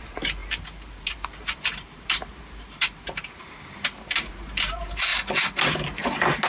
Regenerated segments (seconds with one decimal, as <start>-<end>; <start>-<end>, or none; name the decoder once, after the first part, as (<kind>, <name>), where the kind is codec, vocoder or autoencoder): 0.0-5.1 (vocoder, BigVGAN v2)

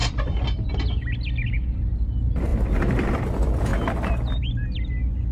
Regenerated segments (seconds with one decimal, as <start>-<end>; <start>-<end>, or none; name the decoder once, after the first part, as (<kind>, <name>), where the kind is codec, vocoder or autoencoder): 0.0-0.7 (vocoder, BigVGAN v2); 2.5-3.2

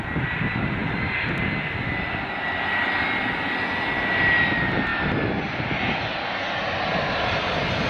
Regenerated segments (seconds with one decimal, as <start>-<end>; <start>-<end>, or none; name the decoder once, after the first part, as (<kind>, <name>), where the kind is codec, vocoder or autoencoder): none

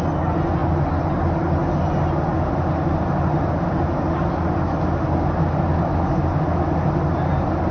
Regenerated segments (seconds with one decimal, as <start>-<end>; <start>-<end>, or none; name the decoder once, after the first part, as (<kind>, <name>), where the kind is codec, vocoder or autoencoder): none